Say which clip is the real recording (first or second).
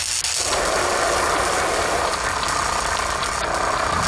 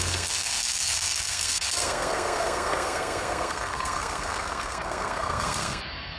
first